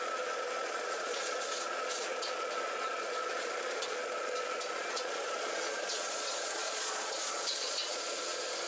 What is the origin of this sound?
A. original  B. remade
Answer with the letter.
B